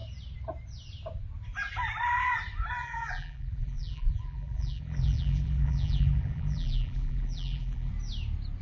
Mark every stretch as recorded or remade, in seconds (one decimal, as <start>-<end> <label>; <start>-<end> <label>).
0.0-2.8 recorded; 2.8-7.9 remade; 7.9-8.6 recorded